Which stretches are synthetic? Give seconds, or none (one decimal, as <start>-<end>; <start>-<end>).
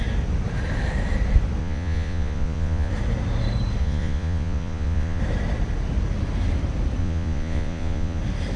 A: 1.6-2.9; 3.8-5.2; 7.0-8.2